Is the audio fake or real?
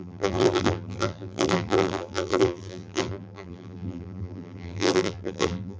fake